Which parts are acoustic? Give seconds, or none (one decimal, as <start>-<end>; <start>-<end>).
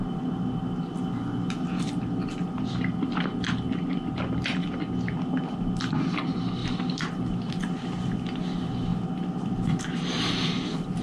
0.0-6.6; 7.5-11.0